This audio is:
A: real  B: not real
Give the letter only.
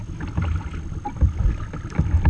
A